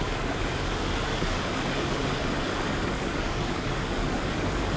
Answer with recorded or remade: remade